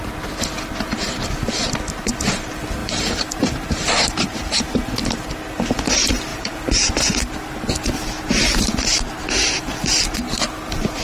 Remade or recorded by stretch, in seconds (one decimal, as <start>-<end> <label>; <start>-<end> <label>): 0.0-2.8 recorded; 2.8-4.6 remade; 4.6-6.3 recorded; 6.3-7.0 remade; 7.0-11.0 recorded

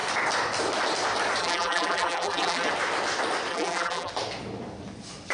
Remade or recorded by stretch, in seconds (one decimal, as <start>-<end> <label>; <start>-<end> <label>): 0.0-1.4 recorded; 1.4-2.7 remade; 2.7-3.5 recorded; 3.5-4.1 remade; 4.1-5.3 recorded

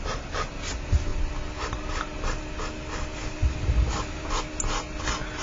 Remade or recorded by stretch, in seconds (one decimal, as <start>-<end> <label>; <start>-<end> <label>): 0.0-1.1 recorded; 1.1-4.3 remade; 4.3-5.4 recorded

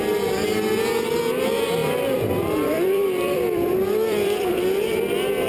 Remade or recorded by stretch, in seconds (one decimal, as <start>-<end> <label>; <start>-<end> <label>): 0.0-1.8 recorded; 1.8-5.0 remade; 5.0-5.5 recorded

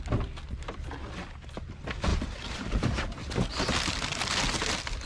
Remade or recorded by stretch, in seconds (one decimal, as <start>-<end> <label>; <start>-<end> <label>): 0.0-2.1 recorded; 2.1-3.3 remade; 3.3-5.1 recorded

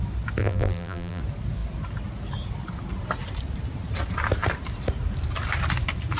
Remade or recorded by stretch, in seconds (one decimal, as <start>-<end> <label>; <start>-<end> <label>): 0.0-0.4 recorded; 0.4-1.2 remade; 1.2-6.2 recorded

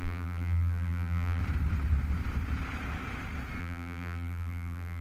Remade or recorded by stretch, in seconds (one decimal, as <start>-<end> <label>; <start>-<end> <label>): 0.0-1.4 remade; 1.4-3.6 recorded; 3.6-5.0 remade